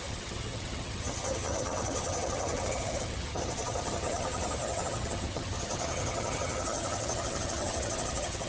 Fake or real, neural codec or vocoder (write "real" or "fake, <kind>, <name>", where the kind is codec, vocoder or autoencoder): fake, vocoder, HiFi-GAN